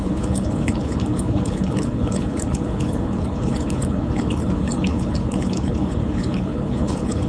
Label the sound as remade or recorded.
remade